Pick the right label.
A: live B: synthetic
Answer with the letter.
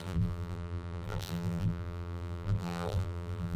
B